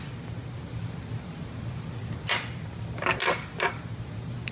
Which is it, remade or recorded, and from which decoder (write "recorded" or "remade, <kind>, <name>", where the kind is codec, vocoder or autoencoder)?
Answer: recorded